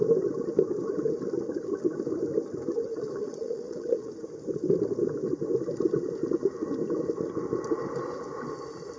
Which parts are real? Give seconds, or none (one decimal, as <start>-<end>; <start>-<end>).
0.0-2.9; 4.1-9.0